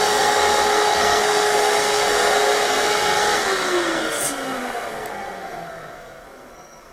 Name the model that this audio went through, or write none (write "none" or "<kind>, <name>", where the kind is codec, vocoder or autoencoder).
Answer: codec, SNAC